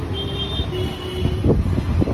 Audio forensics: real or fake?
real